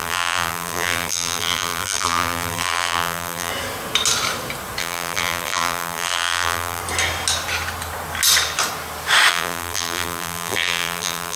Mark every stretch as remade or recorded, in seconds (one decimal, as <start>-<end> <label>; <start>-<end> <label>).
0.0-3.5 remade; 3.5-4.8 recorded; 4.8-6.8 remade; 6.8-9.3 recorded; 9.3-11.4 remade